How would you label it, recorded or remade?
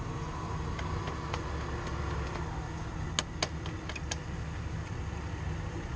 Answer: recorded